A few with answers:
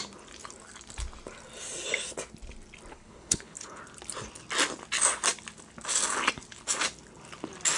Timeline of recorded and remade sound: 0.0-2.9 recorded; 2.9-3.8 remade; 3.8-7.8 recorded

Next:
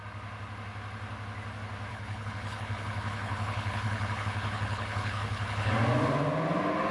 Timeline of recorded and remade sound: 0.0-1.9 recorded; 1.9-5.7 remade; 5.7-6.9 recorded

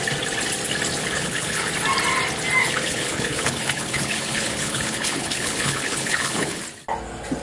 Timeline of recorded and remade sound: 0.0-1.0 recorded; 1.0-1.7 remade; 1.7-2.6 recorded; 2.6-6.6 remade; 6.6-7.4 recorded

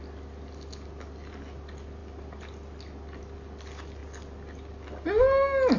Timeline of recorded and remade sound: 0.0-5.8 recorded

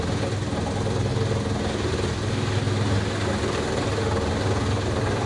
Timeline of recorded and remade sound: 0.0-5.3 recorded

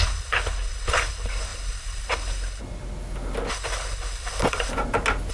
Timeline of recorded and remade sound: 0.0-2.6 remade; 2.6-3.5 recorded; 3.5-4.7 remade; 4.7-5.3 recorded

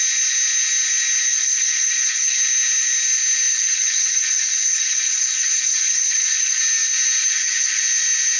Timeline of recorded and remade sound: 0.0-1.3 recorded; 1.3-2.4 remade; 2.4-3.5 recorded; 3.5-6.6 remade; 6.6-7.2 recorded; 7.2-7.8 remade; 7.8-8.4 recorded

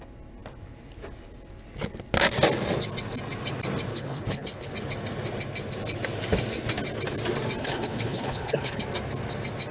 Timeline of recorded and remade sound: 0.0-3.9 recorded; 3.9-4.7 remade; 4.7-7.6 recorded; 7.6-8.8 remade; 8.8-9.7 recorded